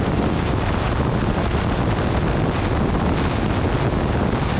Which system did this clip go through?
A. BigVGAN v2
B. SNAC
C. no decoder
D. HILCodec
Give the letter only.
C